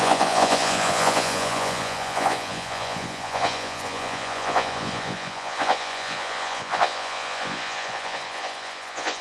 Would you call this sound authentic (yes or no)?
no